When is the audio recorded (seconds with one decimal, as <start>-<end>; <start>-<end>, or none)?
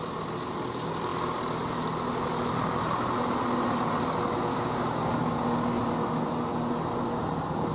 0.0-4.5; 5.8-7.7